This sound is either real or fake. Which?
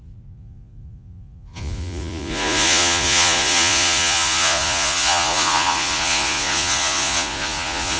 fake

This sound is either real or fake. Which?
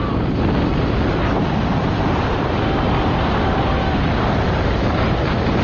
real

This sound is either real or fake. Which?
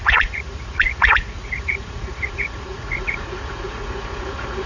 fake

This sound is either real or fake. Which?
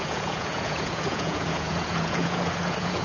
fake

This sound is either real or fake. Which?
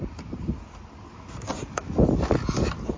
real